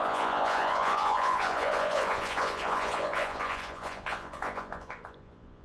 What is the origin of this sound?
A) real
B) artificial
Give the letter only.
B